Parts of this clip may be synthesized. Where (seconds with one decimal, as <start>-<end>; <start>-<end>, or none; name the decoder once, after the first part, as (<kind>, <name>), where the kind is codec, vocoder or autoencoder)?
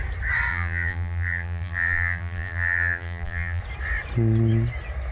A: 0.5-3.6 (vocoder, BigVGAN v2)